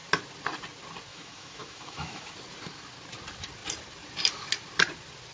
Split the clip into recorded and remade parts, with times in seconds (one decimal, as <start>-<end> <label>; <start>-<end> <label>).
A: 0.0-1.1 recorded; 1.1-2.3 remade; 2.3-5.3 recorded